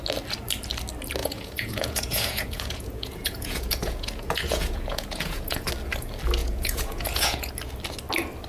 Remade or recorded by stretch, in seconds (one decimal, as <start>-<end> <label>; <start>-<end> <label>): 0.0-1.2 recorded; 1.2-5.7 remade; 5.7-6.4 recorded; 6.4-7.5 remade; 7.5-8.5 recorded